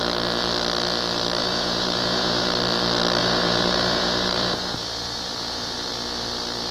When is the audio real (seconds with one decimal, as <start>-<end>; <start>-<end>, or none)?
0.0-1.4; 2.6-3.2; 5.9-6.7